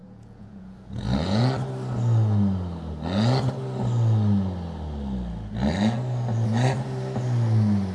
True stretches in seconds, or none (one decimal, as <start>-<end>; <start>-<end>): 1.4-7.9

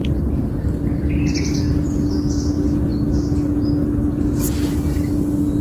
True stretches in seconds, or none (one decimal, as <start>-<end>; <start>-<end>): 0.8-5.6

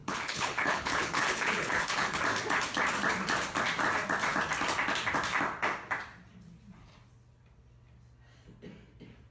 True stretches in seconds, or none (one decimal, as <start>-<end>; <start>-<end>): 2.2-9.3

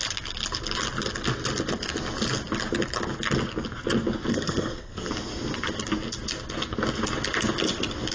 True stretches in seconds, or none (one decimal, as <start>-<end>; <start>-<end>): 0.0-4.3; 5.1-8.1

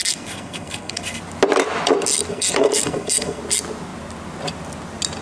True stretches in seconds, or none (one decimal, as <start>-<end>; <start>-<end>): 1.2-2.3; 3.4-5.2